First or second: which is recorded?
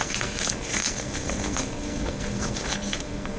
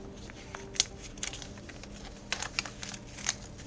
second